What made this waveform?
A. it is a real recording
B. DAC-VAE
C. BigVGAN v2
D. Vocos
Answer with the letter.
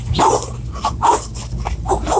A